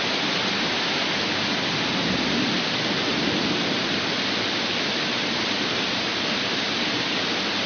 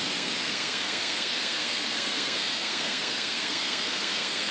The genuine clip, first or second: first